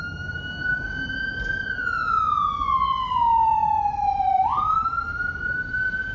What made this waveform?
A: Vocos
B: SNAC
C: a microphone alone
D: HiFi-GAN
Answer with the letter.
C